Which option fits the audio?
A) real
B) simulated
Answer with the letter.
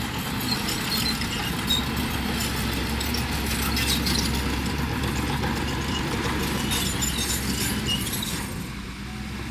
A